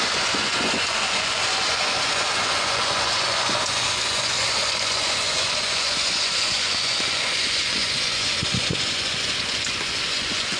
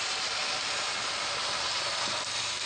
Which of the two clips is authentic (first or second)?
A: second